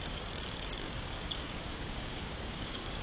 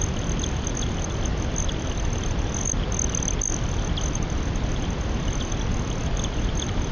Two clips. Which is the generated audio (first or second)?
first